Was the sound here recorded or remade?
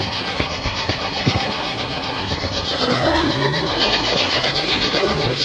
remade